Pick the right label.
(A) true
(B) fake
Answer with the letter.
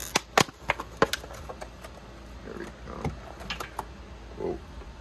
A